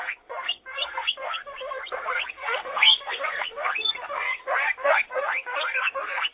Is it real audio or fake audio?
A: fake